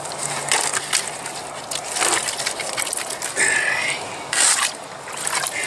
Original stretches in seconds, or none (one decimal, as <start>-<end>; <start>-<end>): 0.0-5.7